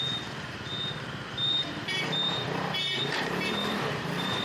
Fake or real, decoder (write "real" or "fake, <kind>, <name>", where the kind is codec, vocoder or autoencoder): fake, vocoder, BigVGAN v2